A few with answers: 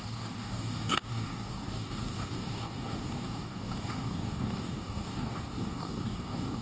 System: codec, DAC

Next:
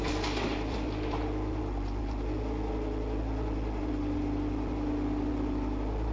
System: none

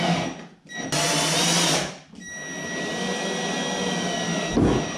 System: none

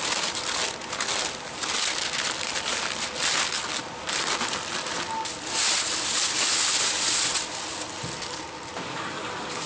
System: none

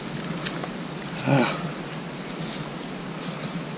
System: none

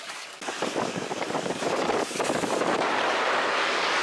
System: codec, DAC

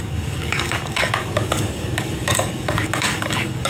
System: codec, DAC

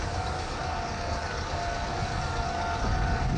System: codec, DAC